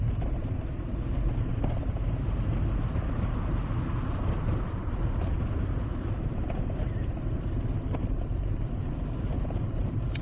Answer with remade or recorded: recorded